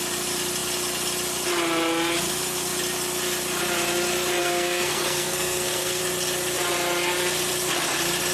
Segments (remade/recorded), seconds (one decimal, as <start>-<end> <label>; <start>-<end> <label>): 0.0-4.4 recorded; 4.4-6.0 remade; 6.0-8.3 recorded